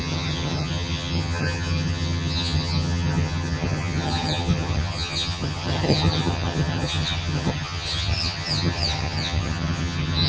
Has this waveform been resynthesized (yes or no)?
yes